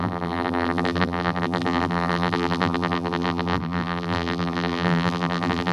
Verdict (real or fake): fake